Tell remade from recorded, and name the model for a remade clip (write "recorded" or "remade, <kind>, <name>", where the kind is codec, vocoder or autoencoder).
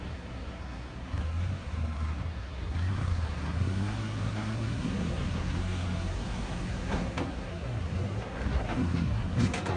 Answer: remade, codec, SNAC